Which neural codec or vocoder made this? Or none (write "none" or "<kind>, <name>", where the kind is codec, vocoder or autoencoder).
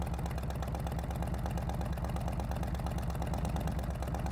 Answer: none